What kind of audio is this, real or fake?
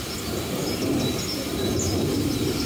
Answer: real